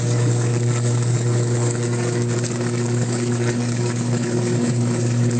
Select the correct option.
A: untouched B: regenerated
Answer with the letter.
B